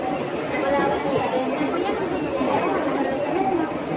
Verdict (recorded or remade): recorded